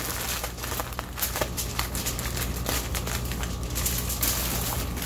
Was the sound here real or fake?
real